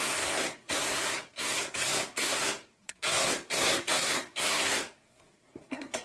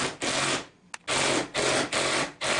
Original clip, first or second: second